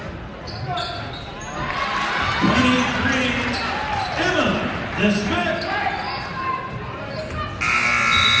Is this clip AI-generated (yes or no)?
no